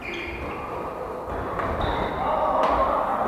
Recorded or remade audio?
recorded